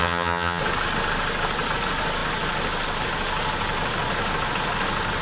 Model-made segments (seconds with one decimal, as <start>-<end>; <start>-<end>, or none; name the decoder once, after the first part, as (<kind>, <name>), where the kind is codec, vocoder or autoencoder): 0.0-0.6 (vocoder, HiFi-GAN)